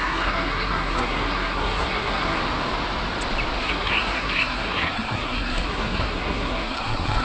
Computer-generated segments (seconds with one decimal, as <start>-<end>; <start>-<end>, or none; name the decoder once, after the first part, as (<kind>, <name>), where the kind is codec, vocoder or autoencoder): 0.0-2.4 (codec, SNAC); 3.6-7.2